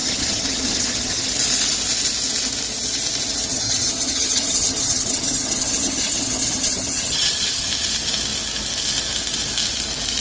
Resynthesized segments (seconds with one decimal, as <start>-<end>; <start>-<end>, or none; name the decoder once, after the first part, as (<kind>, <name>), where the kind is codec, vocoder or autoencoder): 0.0-1.3 (vocoder, HiFi-GAN); 3.5-7.7